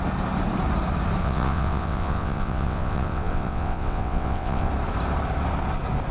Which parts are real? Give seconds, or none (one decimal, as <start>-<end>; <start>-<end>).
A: 0.0-1.2; 4.7-6.1